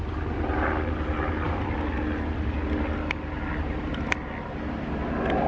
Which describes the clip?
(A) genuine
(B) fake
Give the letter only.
A